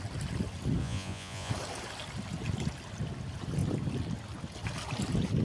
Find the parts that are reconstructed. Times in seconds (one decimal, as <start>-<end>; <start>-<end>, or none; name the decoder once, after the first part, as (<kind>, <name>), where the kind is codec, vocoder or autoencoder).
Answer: 0.8-1.5 (vocoder, Vocos)